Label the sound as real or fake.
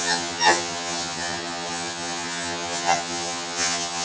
fake